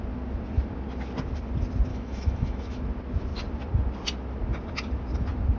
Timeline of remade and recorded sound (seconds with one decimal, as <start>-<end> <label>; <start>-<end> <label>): 0.0-1.9 recorded; 1.9-2.8 remade; 2.8-5.6 recorded